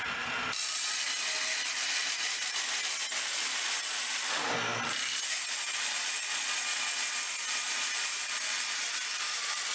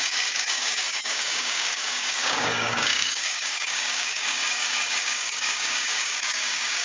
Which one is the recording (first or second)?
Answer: first